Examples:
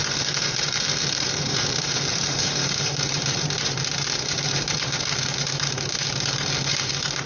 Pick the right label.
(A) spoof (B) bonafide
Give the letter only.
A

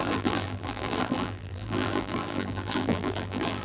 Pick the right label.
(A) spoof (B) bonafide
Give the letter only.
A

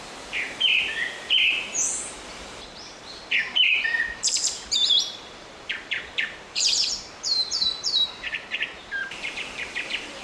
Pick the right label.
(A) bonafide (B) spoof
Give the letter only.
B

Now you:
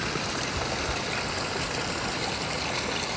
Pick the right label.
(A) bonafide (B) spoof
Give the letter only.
A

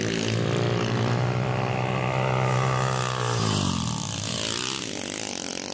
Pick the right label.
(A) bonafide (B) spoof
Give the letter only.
A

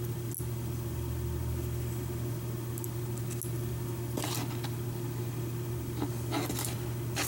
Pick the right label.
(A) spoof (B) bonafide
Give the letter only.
B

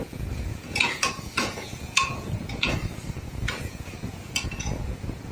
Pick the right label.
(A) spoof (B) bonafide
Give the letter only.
A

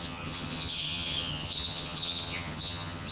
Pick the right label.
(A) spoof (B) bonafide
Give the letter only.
A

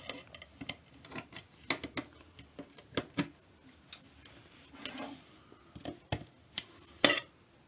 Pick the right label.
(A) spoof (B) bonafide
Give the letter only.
B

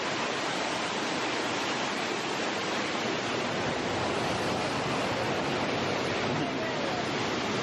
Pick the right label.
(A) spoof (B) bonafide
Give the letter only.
B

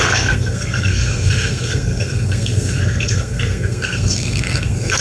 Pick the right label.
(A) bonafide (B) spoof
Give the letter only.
B